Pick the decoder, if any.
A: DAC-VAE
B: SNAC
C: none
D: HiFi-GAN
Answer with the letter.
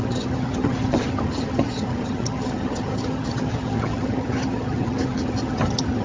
D